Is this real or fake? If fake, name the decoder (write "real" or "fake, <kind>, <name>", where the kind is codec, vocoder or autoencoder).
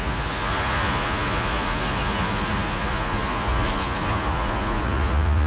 fake, vocoder, Vocos